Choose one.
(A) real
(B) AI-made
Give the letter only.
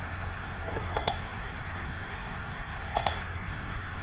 B